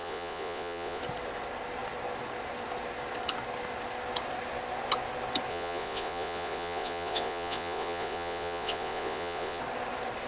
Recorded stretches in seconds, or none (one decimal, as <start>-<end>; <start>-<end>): 1.0-5.5; 9.6-10.3